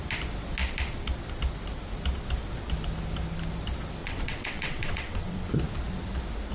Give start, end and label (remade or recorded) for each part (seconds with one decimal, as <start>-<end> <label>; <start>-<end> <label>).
0.0-4.0 recorded; 4.0-5.5 remade; 5.5-6.5 recorded